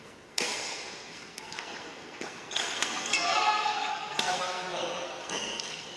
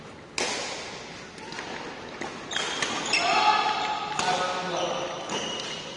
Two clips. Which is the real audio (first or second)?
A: second